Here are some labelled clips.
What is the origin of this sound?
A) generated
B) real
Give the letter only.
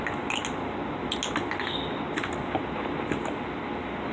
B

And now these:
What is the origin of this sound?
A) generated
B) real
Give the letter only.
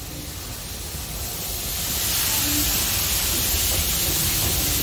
B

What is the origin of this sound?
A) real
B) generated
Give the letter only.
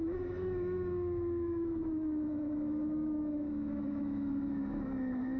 B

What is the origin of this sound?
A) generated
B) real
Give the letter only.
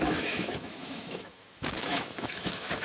A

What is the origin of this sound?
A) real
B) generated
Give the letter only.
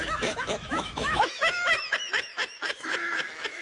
B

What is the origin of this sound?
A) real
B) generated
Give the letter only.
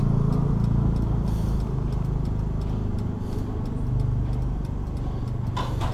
A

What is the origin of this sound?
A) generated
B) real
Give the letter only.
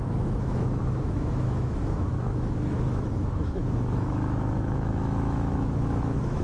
A